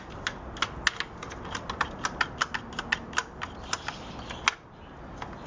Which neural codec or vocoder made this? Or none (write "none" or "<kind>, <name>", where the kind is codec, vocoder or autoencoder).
none